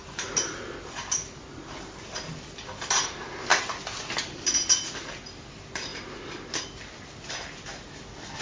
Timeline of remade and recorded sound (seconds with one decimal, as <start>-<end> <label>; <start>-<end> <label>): 0.0-8.4 recorded